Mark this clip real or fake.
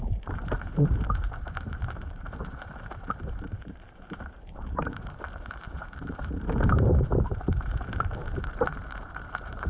fake